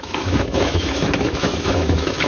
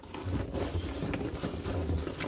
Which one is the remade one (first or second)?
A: first